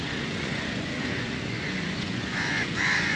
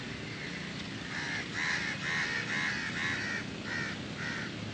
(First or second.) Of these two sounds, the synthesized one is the first